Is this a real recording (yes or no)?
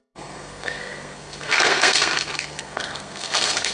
no